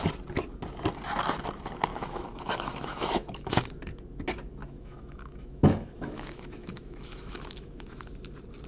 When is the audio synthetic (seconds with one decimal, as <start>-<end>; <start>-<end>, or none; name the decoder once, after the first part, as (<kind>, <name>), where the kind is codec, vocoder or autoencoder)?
1.9-3.6 (autoencoder, DAC-VAE); 4.6-8.1